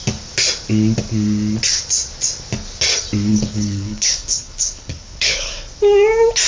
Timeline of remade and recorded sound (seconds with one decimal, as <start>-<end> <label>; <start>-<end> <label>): 0.0-3.3 recorded; 3.3-5.5 remade; 5.5-6.5 recorded